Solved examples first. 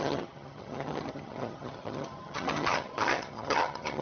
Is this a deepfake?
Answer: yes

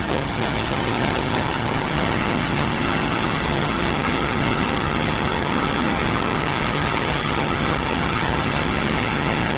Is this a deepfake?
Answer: yes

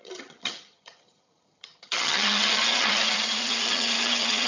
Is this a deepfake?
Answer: yes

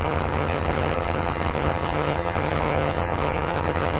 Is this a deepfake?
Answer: yes